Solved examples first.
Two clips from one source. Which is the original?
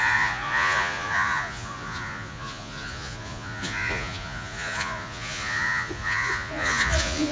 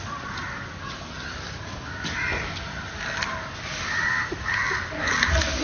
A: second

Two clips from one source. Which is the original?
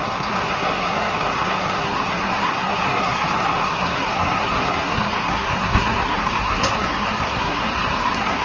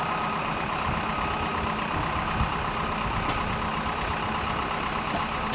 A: second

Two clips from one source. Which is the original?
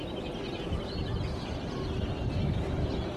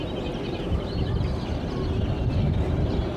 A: first